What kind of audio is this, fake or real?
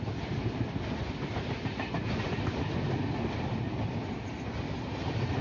real